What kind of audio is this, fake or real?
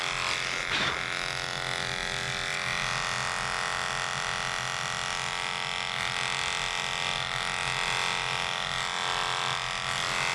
real